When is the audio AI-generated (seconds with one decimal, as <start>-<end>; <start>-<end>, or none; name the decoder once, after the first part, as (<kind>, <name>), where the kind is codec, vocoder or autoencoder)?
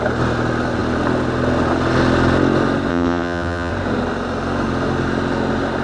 2.9-3.7 (vocoder, WaveNeXt)